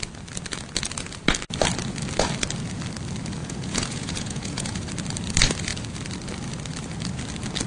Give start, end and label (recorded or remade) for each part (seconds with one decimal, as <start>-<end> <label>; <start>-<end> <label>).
0.0-3.4 recorded; 3.4-4.9 remade; 4.9-7.7 recorded